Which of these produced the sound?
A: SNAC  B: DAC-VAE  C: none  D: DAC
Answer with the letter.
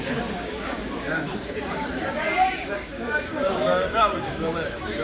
D